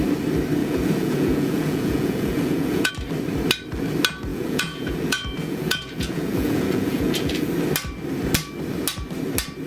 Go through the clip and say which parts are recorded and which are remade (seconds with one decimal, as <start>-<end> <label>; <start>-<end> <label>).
0.0-0.6 recorded; 0.6-2.9 remade; 2.9-4.3 recorded; 4.3-7.5 remade; 7.5-9.7 recorded